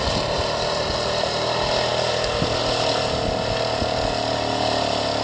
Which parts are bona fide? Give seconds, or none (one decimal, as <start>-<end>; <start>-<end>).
0.0-5.2

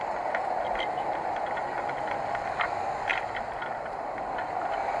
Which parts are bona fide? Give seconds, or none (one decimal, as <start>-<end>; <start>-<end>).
0.0-3.1; 4.1-5.0

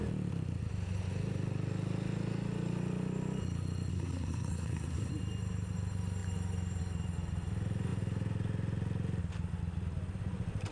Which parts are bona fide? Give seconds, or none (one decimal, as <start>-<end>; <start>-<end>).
0.0-3.9; 5.1-10.7

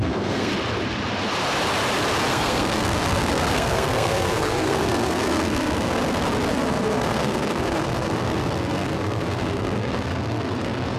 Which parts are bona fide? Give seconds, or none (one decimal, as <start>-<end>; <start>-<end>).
0.5-2.3; 6.0-6.5